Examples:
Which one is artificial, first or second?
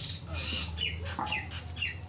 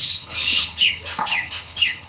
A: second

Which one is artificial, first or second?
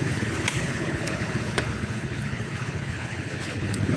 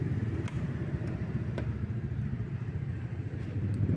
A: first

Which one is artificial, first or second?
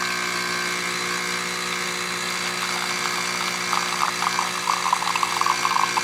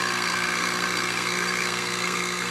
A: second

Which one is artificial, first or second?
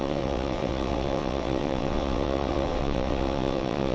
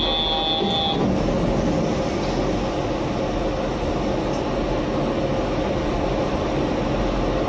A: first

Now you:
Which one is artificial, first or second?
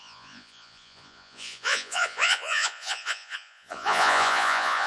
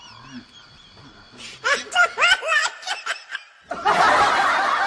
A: first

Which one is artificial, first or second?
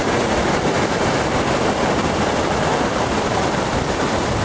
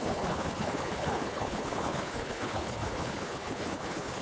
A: second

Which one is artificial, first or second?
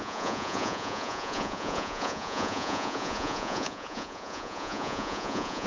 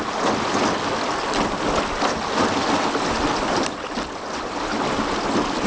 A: first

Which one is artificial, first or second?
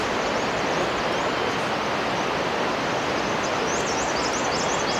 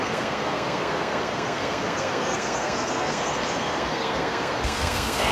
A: second